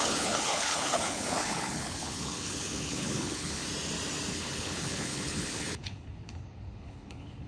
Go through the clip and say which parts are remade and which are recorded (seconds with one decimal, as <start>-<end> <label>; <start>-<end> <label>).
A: 0.0-3.6 remade; 3.6-4.3 recorded; 4.3-7.5 remade

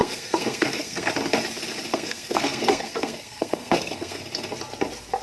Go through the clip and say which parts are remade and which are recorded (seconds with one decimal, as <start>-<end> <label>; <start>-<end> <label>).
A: 0.0-1.1 remade; 1.1-1.9 recorded; 1.9-4.2 remade; 4.2-5.2 recorded

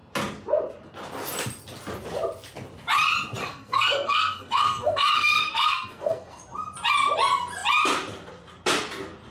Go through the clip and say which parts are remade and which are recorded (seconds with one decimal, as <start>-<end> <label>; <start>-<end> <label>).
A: 0.0-3.4 recorded; 3.4-6.4 remade; 6.4-9.3 recorded

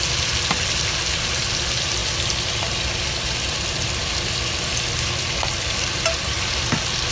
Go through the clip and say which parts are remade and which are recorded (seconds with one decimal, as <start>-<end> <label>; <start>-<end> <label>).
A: 0.0-7.1 recorded

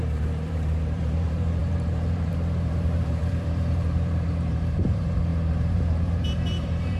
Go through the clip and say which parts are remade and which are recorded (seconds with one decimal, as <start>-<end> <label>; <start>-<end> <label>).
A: 0.0-7.0 remade

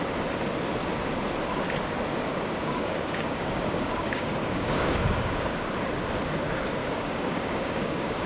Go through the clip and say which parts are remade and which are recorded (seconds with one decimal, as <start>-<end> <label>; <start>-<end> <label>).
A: 0.0-2.3 recorded; 2.3-5.7 remade; 5.7-6.8 recorded; 6.8-8.3 remade

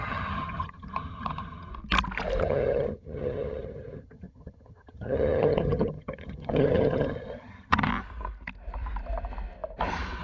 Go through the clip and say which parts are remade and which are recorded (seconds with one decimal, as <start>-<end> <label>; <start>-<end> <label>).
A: 0.0-1.7 remade; 1.7-2.4 recorded; 2.4-7.9 remade; 7.9-10.2 recorded

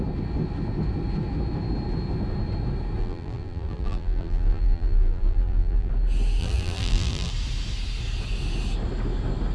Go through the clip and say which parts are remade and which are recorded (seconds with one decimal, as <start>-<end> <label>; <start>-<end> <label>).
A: 0.0-3.0 recorded; 3.0-5.9 remade; 5.9-6.4 recorded; 6.4-7.3 remade; 7.3-9.5 recorded